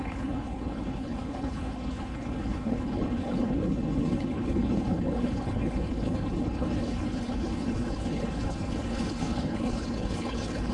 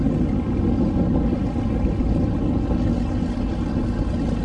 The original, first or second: second